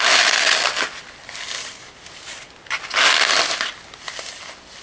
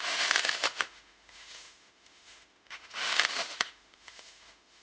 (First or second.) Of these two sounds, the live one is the first